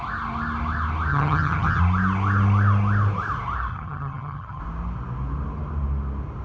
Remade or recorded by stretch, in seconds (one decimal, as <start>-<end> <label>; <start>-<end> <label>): 0.0-1.1 recorded; 1.1-1.8 remade; 1.8-3.7 recorded; 3.7-4.6 remade; 4.6-6.4 recorded